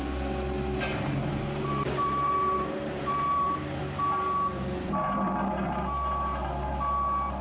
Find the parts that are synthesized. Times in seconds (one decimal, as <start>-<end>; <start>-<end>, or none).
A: 0.9-3.8